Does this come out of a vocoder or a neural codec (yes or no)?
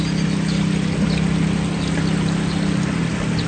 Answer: no